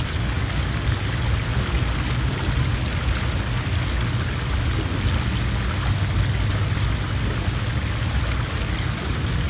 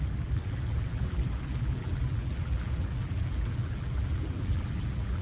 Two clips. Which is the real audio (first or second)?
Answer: first